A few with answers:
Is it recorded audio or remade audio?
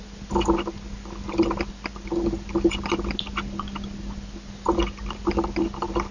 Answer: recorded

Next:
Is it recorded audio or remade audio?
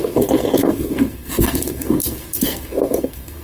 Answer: remade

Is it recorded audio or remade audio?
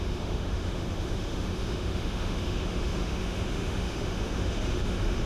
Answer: remade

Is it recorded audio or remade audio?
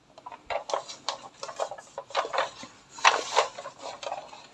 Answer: recorded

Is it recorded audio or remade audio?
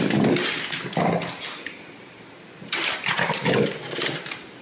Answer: recorded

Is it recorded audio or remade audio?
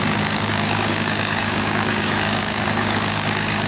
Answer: remade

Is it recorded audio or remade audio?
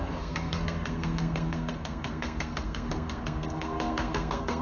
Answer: remade